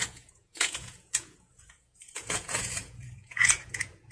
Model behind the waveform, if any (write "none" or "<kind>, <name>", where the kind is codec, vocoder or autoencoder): vocoder, Vocos